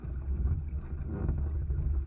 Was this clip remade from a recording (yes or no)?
no